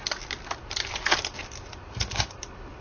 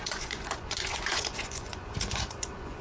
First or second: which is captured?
first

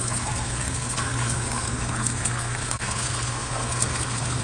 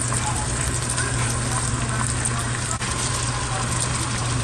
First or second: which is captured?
second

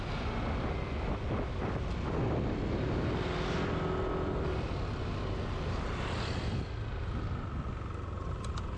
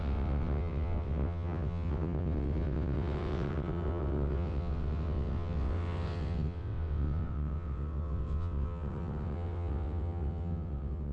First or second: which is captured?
first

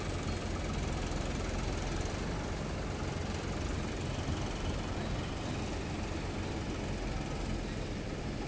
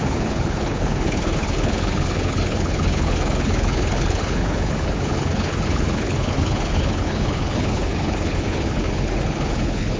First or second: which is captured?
first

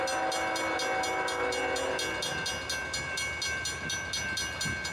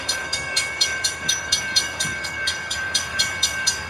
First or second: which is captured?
first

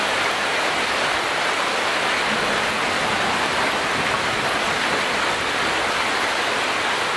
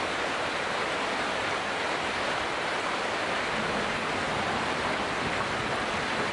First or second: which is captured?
first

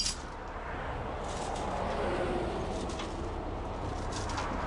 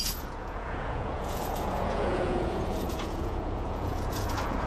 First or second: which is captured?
first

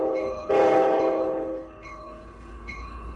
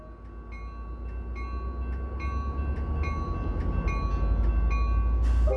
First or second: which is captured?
second